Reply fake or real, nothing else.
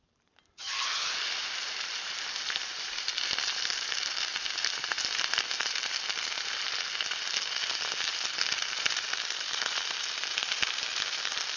fake